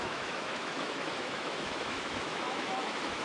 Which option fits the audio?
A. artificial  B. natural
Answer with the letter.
A